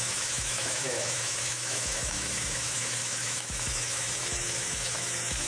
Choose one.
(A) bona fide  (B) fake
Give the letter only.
B